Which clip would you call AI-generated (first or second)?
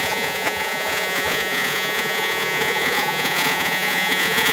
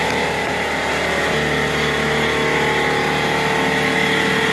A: first